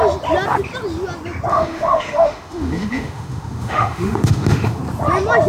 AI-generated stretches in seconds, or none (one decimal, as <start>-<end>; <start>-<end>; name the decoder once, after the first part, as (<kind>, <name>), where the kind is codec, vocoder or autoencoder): 1.5-4.8 (autoencoder, DAC-VAE)